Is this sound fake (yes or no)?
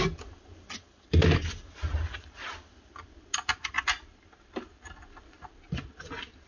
no